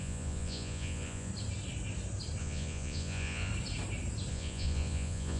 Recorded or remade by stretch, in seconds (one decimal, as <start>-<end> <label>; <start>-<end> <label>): 0.0-1.3 remade; 1.3-2.4 recorded; 2.4-3.5 remade; 3.5-4.3 recorded; 4.3-5.4 remade